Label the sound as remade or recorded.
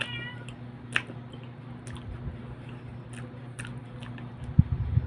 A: recorded